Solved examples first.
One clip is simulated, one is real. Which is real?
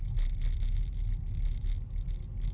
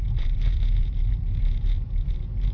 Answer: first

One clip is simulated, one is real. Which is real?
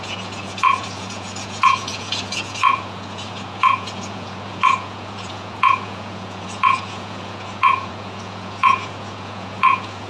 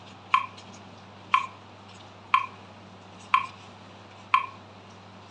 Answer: second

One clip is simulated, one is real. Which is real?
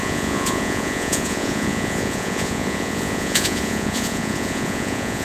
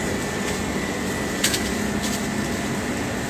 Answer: second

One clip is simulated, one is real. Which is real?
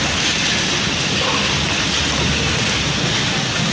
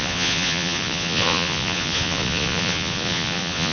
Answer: first